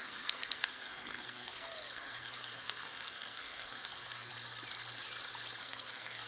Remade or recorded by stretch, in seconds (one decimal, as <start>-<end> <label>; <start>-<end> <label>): 0.0-4.3 remade; 4.3-5.6 recorded; 5.6-6.3 remade